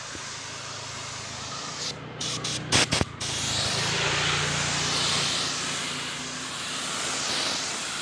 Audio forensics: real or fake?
real